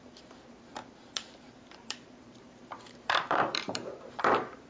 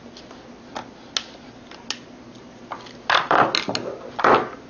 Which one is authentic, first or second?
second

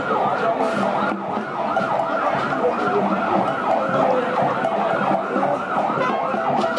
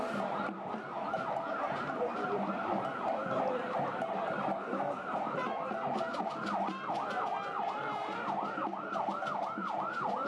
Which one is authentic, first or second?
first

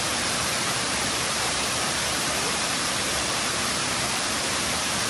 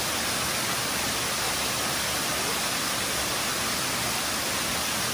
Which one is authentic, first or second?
second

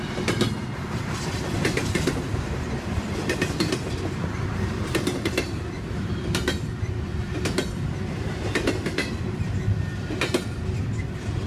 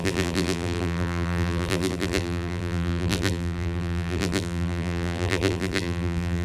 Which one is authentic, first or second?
first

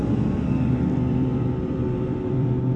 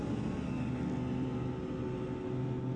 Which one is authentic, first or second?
second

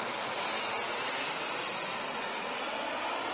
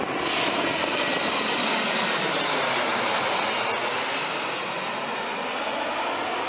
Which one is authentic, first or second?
second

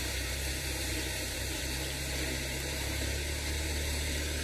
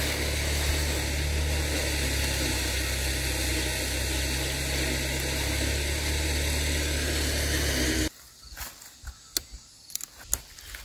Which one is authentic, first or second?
second